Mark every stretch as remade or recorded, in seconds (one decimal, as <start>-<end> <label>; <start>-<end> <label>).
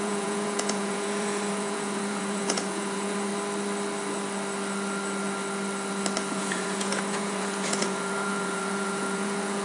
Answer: 0.0-3.3 remade; 3.3-6.3 recorded; 6.3-9.6 remade